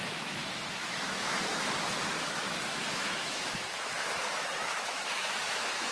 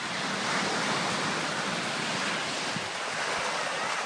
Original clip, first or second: second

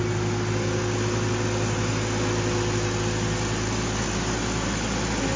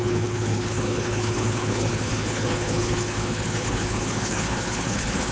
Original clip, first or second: first